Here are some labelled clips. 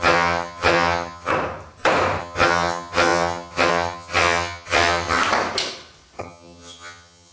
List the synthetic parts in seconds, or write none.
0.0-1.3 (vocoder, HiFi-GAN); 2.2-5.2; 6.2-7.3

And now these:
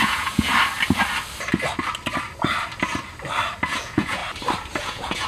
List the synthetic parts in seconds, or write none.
0.0-0.5 (vocoder, Vocos); 3.7-4.2; 4.8-5.3

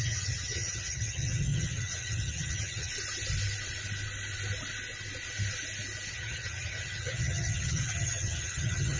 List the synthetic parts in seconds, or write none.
0.0-2.9 (vocoder, HiFi-GAN); 6.1-9.0

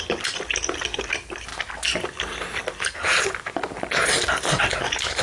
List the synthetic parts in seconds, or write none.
none

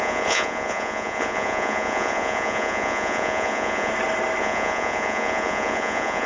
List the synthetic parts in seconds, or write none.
0.0-3.9 (vocoder, Vocos); 4.4-6.3

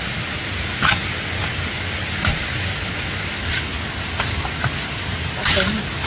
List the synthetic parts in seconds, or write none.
none

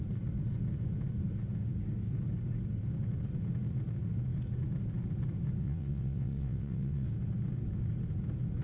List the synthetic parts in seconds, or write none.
5.6-7.1 (vocoder, WaveNeXt)

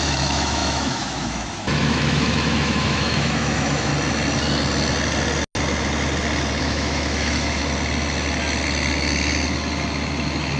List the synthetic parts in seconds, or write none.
0.0-3.9 (autoencoder, DAC-VAE); 6.6-7.6